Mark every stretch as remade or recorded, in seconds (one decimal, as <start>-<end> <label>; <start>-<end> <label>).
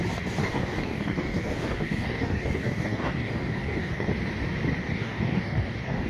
0.0-0.4 recorded; 0.4-4.1 remade; 4.1-4.8 recorded; 4.8-6.1 remade